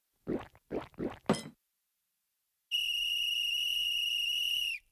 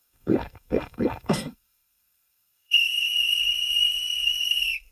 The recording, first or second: first